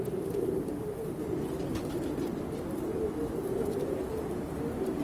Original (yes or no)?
yes